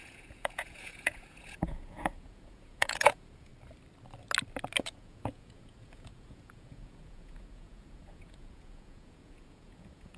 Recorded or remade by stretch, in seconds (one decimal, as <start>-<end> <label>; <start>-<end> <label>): 0.0-3.5 remade; 3.5-4.8 recorded; 4.8-10.2 remade